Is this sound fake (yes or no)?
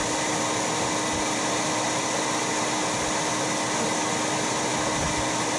no